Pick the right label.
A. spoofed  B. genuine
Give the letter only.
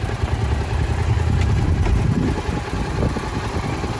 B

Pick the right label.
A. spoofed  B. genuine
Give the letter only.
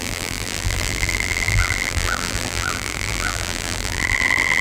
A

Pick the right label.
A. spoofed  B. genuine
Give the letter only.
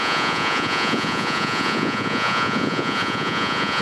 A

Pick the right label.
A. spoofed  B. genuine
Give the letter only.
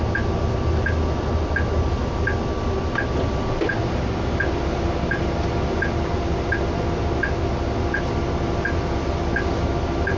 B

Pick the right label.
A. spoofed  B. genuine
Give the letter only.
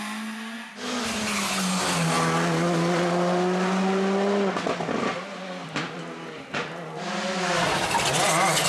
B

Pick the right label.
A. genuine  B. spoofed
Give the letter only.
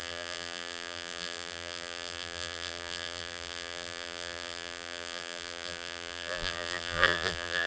B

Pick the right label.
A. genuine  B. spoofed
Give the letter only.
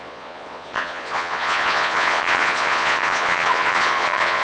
B